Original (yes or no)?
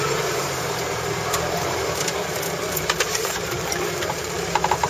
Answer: no